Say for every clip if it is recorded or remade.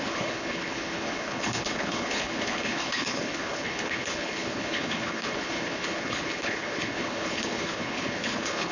remade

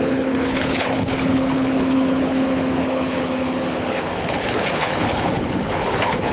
remade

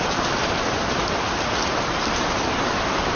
recorded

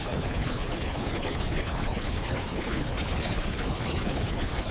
remade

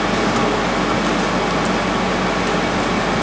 recorded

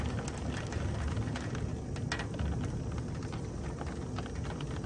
recorded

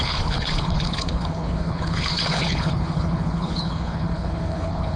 remade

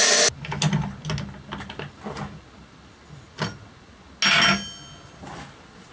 recorded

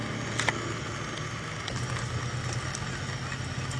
recorded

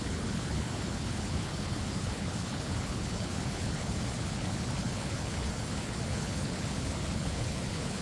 remade